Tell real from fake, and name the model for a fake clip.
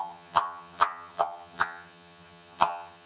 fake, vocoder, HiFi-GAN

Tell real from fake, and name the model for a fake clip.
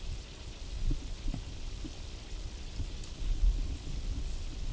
real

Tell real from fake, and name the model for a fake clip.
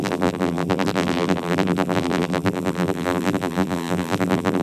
fake, vocoder, BigVGAN v2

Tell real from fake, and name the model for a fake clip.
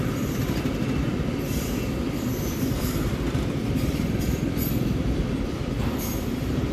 fake, vocoder, BigVGAN v2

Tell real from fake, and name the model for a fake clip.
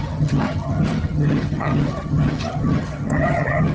fake, vocoder, HiFi-GAN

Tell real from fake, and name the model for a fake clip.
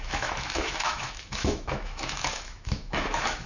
fake, autoencoder, DAC-VAE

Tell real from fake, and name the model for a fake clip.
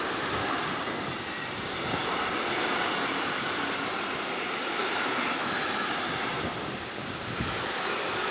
fake, vocoder, BigVGAN v2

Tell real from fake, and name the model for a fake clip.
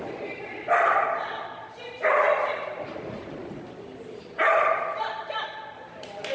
fake, vocoder, BigVGAN v2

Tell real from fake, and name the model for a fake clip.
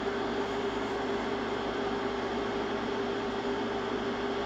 real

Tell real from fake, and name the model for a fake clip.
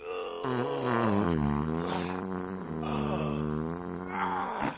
real